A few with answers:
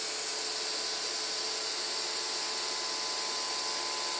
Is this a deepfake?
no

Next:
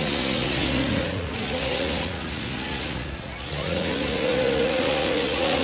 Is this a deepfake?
yes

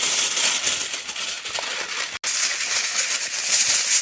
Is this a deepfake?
no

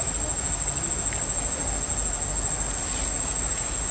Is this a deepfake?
no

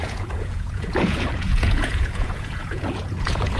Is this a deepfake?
yes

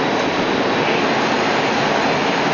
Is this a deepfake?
no